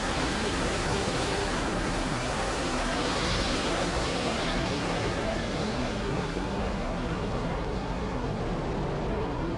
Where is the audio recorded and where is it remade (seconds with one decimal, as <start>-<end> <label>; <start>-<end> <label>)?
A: 0.0-8.4 remade; 8.4-9.1 recorded; 9.1-9.6 remade